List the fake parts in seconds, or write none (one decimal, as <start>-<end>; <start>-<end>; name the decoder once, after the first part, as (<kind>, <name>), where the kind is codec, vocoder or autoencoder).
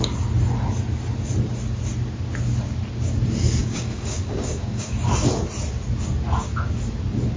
3.6-5.1 (codec, DAC)